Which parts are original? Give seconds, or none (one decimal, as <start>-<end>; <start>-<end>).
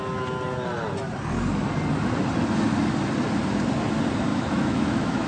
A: 0.0-4.3